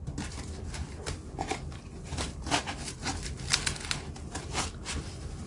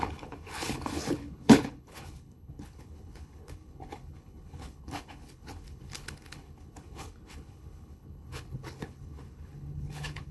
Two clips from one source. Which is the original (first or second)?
first